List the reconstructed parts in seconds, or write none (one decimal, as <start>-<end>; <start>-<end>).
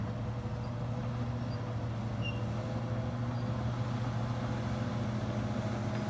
none